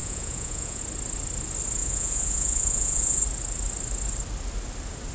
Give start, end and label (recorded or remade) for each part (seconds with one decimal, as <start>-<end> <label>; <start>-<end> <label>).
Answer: 0.0-0.8 remade; 0.8-1.8 recorded; 1.8-3.2 remade; 3.2-5.1 recorded